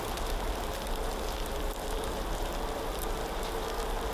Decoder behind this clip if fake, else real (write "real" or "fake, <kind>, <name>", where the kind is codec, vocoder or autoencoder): real